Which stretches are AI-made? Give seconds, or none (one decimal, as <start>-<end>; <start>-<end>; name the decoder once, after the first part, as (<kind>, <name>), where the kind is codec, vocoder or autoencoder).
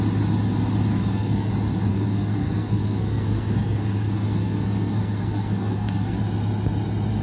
0.9-1.5 (codec, SNAC); 1.9-6.2